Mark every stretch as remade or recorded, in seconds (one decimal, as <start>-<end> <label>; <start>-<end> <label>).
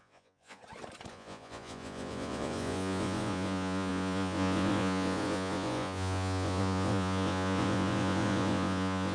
0.0-0.6 remade; 0.6-1.1 recorded; 1.1-9.1 remade